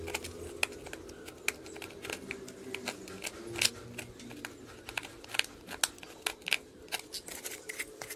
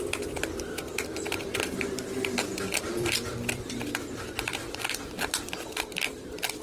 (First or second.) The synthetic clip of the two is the second